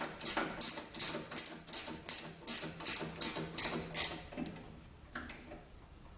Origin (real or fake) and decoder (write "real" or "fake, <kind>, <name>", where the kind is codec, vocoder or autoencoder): real